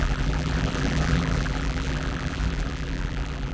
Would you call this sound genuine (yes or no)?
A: no